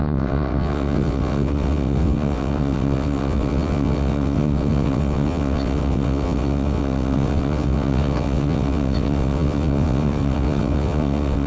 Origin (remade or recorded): remade